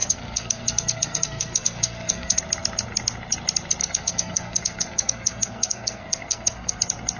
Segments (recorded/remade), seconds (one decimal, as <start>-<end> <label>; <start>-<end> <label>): 0.0-2.4 remade; 2.4-3.8 recorded; 3.8-6.8 remade; 6.8-7.2 recorded